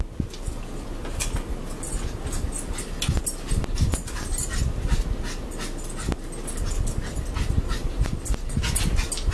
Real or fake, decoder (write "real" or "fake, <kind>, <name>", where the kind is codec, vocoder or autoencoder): real